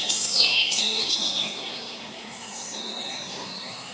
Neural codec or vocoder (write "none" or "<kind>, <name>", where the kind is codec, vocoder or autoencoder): codec, SNAC